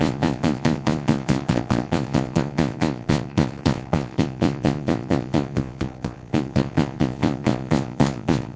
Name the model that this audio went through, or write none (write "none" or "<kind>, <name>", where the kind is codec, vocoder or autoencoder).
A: vocoder, Vocos